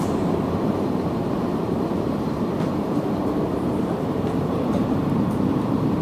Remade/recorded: remade